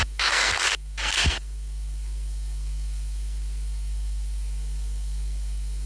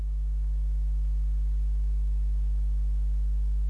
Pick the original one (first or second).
second